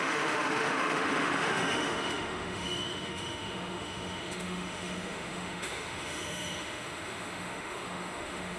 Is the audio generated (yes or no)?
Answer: yes